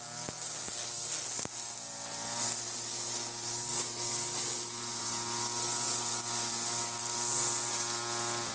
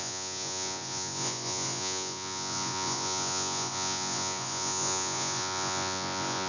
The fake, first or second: second